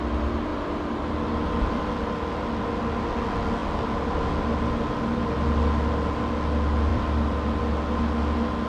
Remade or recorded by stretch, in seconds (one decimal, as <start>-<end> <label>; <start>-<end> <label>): 0.0-0.5 recorded; 0.5-1.8 remade; 1.8-3.6 recorded; 3.6-4.3 remade; 4.3-6.9 recorded; 6.9-7.6 remade; 7.6-8.7 recorded